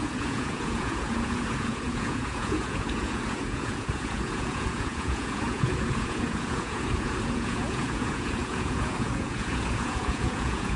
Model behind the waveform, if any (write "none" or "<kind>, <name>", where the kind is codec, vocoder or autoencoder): vocoder, Vocos